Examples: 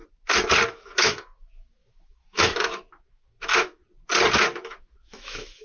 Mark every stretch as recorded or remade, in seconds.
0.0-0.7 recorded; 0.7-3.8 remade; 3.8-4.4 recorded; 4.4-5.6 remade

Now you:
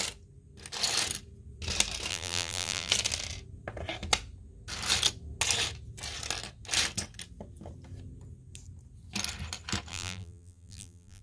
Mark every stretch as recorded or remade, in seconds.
0.0-2.1 recorded; 2.1-2.9 remade; 2.9-9.9 recorded; 9.9-11.2 remade

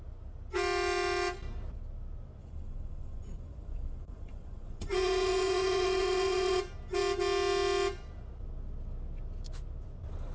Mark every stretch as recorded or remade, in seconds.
0.0-2.4 recorded; 2.4-6.6 remade; 6.6-10.3 recorded